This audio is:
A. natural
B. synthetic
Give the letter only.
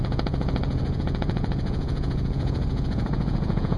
B